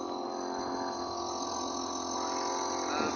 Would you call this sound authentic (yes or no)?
yes